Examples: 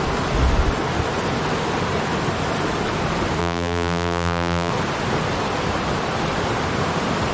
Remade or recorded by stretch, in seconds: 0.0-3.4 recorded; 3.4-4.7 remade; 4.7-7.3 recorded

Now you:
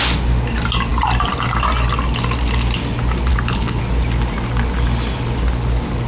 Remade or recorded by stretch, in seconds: 0.0-3.3 recorded; 3.3-3.8 remade; 3.8-6.1 recorded

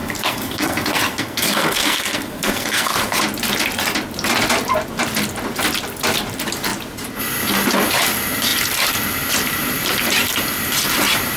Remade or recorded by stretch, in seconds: 0.0-3.2 remade; 3.2-11.4 recorded

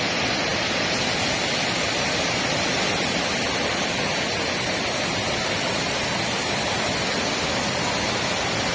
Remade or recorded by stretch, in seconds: 0.0-8.7 recorded

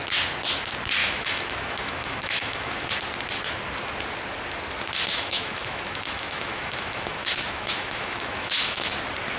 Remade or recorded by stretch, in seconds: 0.0-1.0 recorded; 1.0-2.9 remade; 2.9-5.1 recorded; 5.1-8.9 remade; 8.9-9.4 recorded

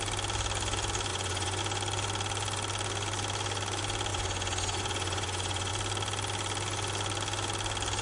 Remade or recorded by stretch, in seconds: 0.0-1.1 recorded; 1.1-1.6 remade; 1.6-4.1 recorded; 4.1-5.7 remade; 5.7-8.0 recorded

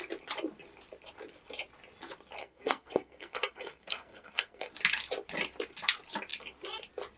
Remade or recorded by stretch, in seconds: 0.0-2.4 recorded; 2.4-4.7 remade; 4.7-7.2 recorded

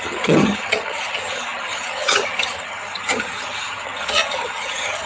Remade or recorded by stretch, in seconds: 0.0-5.1 remade